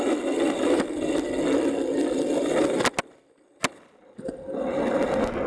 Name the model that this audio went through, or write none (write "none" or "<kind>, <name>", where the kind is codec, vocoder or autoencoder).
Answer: none